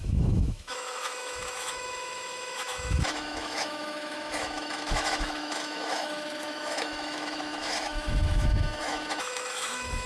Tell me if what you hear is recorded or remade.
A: remade